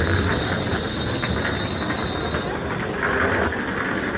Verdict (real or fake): real